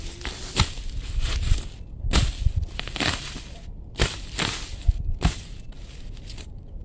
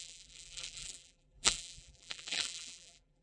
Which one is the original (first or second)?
first